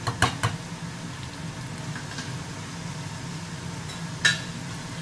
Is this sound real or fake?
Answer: real